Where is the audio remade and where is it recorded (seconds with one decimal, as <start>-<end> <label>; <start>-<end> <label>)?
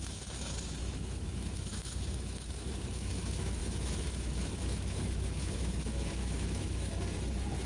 0.0-6.9 remade; 6.9-7.7 recorded